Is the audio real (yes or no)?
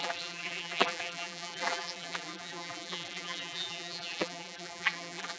no